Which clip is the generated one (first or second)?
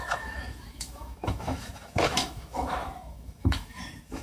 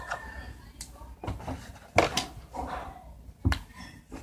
first